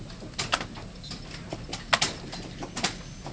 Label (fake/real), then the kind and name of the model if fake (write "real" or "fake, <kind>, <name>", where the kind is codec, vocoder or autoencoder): real